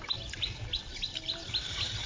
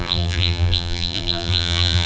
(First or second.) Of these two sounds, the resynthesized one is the second